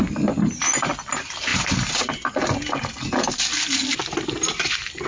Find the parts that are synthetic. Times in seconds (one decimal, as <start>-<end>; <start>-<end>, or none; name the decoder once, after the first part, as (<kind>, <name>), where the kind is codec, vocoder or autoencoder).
none